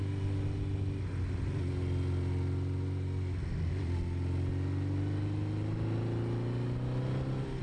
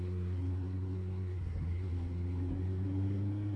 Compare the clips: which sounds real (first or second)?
first